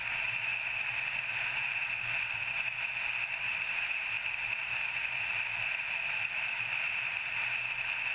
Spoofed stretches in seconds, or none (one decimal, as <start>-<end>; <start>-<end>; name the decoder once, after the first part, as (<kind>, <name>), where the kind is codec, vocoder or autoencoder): 5.0-7.1 (vocoder, BigVGAN v2)